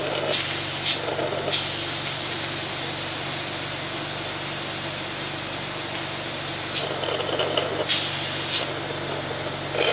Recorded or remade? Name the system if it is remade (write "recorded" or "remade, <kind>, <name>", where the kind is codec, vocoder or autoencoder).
recorded